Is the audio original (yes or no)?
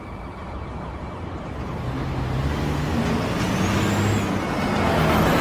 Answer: yes